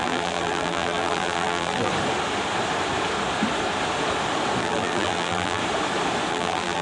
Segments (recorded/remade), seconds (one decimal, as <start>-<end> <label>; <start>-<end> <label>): 0.0-1.9 remade; 1.9-4.6 recorded; 4.6-5.6 remade; 5.6-6.3 recorded; 6.3-6.8 remade